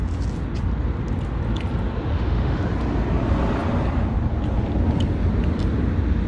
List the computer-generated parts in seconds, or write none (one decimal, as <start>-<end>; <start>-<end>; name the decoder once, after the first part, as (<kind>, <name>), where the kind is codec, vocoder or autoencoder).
2.1-2.6 (autoencoder, DAC-VAE)